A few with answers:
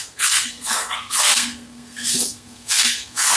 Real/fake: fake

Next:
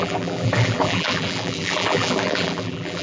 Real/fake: fake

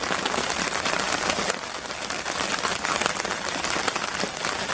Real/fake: real